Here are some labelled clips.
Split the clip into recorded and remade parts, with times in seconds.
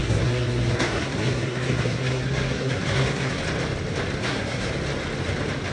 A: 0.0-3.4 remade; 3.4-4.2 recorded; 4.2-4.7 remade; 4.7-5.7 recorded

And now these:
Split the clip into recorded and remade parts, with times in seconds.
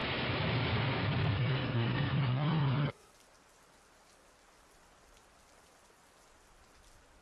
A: 0.0-1.3 recorded; 1.3-3.1 remade; 3.1-7.2 recorded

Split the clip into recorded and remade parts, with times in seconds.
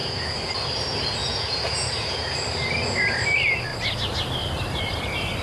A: 0.0-0.5 remade; 0.5-1.2 recorded; 1.2-2.3 remade; 2.3-5.4 recorded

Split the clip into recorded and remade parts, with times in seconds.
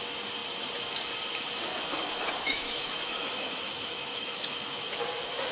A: 0.0-1.7 recorded; 1.7-5.0 remade; 5.0-5.5 recorded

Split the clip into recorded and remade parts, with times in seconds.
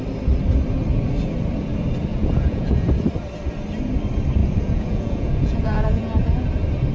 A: 0.0-2.1 recorded; 2.1-2.9 remade; 2.9-4.4 recorded; 4.4-6.5 remade; 6.5-6.9 recorded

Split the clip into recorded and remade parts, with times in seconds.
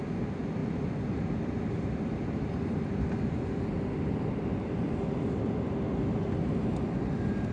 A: 0.0-7.5 recorded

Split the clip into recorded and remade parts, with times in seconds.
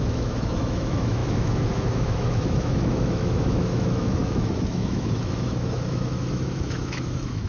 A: 0.0-7.5 remade